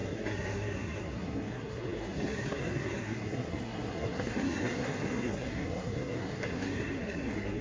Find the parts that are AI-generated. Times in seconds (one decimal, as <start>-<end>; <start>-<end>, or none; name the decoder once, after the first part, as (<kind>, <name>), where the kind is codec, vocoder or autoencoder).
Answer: 0.0-7.6 (codec, SNAC)